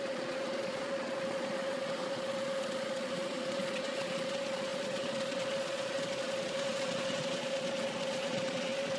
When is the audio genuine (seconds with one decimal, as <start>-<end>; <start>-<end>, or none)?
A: none